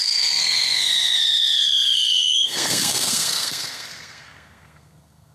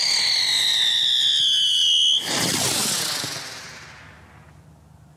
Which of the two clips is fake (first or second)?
first